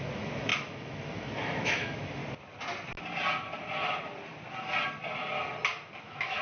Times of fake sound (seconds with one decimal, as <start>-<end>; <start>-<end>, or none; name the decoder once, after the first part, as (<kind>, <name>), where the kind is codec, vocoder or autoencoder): 0.0-2.2 (autoencoder, DAC-VAE); 6.0-6.4